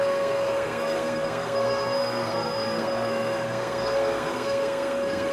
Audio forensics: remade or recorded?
remade